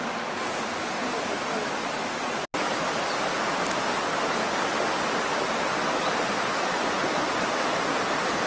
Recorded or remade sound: recorded